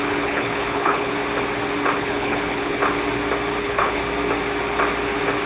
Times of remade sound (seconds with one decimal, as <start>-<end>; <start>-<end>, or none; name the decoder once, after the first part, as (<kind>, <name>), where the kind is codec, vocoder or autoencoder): 0.0-1.2 (codec, HILCodec); 2.0-2.8; 3.6-4.0